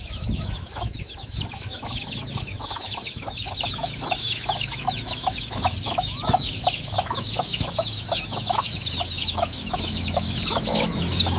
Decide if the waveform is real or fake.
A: fake